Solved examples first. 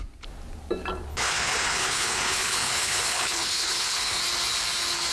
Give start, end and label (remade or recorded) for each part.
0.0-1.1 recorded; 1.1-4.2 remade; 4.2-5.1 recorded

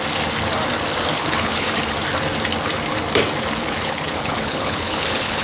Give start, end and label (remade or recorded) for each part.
0.0-1.1 recorded; 1.1-1.8 remade; 1.8-3.6 recorded; 3.6-5.4 remade